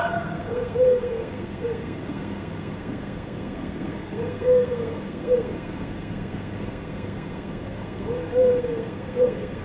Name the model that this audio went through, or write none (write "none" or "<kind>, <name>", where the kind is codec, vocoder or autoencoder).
codec, SNAC